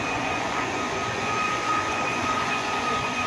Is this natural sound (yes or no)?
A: no